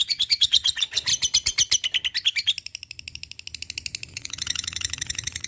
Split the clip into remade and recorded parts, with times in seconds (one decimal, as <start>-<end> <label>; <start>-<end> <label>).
0.0-1.1 remade; 1.1-4.1 recorded; 4.1-5.5 remade

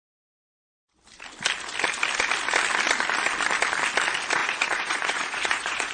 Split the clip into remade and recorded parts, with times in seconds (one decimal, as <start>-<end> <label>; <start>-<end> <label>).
0.0-4.4 recorded; 4.4-5.9 remade

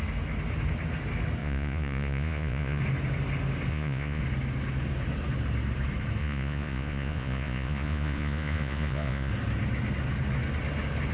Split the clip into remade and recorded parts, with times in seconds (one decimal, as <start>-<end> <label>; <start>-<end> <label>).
0.0-1.4 recorded; 1.4-2.8 remade; 2.8-3.7 recorded; 3.7-4.2 remade; 4.2-6.2 recorded; 6.2-9.3 remade; 9.3-11.1 recorded